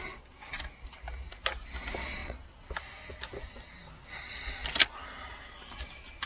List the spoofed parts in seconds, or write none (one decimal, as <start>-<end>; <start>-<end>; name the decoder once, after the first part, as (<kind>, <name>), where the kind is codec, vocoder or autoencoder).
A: 2.2-2.7 (vocoder, WaveNeXt)